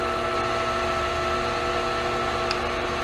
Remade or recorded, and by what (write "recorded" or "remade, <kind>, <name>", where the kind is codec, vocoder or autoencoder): recorded